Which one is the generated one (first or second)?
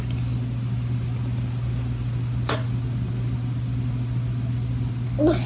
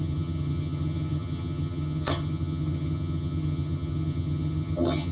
second